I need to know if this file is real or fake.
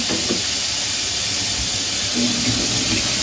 real